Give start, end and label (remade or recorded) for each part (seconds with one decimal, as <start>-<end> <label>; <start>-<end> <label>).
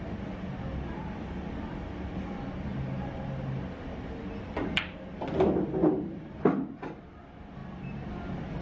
0.0-8.6 recorded